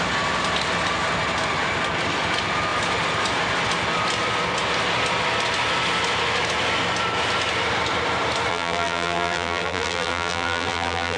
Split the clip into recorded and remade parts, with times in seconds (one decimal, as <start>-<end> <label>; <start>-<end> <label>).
0.0-8.5 recorded; 8.5-11.2 remade